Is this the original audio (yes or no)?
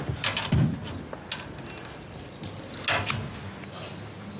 yes